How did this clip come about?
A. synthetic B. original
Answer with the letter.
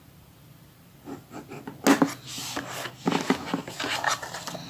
B